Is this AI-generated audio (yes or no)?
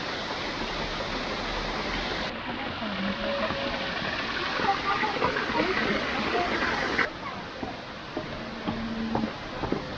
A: no